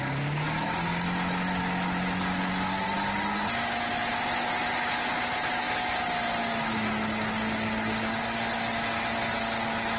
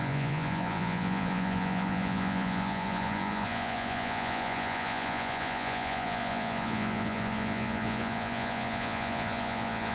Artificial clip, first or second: second